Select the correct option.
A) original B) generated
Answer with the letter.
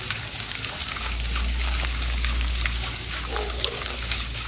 B